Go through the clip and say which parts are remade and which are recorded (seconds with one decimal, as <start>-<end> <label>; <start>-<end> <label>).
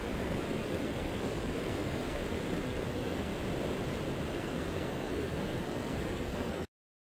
0.0-3.3 remade; 3.3-4.3 recorded; 4.3-7.1 remade